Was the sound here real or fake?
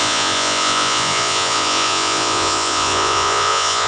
fake